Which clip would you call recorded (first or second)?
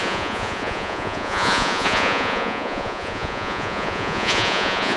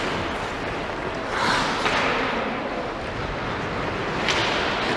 second